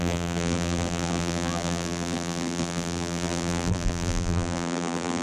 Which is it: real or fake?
fake